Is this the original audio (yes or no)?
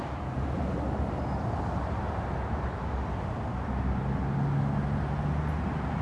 yes